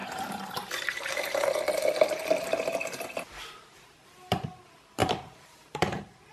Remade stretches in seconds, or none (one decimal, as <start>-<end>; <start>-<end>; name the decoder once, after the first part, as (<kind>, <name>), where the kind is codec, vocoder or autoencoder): 0.0-1.7 (vocoder, BigVGAN v2); 5.0-6.3